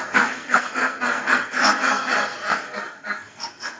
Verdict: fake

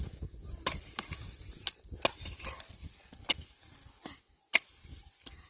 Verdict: real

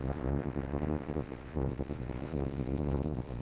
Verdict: fake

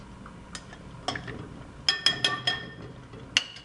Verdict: real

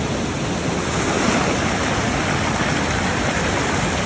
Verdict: real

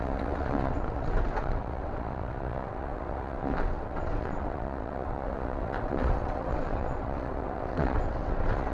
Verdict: fake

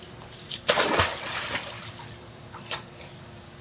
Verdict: fake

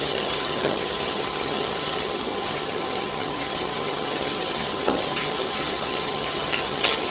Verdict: fake